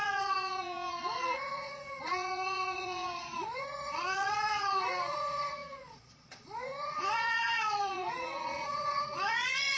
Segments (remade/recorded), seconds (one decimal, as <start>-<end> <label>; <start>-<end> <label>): 0.0-9.8 remade